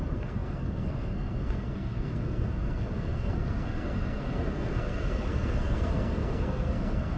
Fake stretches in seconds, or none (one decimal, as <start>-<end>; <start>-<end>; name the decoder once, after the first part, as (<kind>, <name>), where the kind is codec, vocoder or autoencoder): 0.0-7.2 (codec, SNAC)